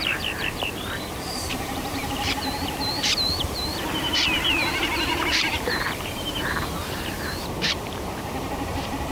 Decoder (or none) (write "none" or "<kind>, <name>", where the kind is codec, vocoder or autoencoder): vocoder, BigVGAN v2